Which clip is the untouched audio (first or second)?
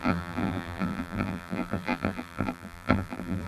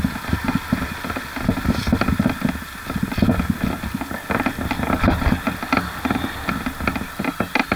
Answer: second